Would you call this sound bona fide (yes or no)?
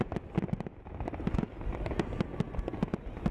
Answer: no